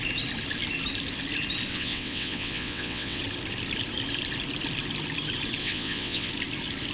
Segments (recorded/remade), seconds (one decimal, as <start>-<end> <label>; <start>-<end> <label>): 0.0-1.7 recorded; 1.7-3.2 remade; 3.2-5.6 recorded; 5.6-6.3 remade; 6.3-6.9 recorded